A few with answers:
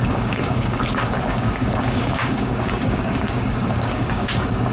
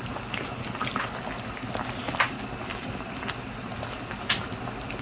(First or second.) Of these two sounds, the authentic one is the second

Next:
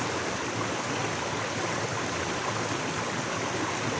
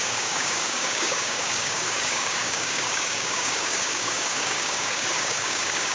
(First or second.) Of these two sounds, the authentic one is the first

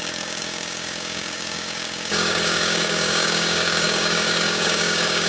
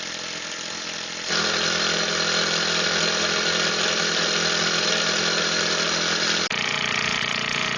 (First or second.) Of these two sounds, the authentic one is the second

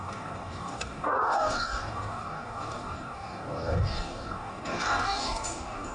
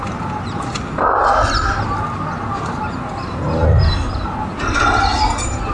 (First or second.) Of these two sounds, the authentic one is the second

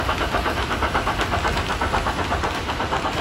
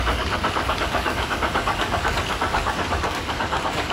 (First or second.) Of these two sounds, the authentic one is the first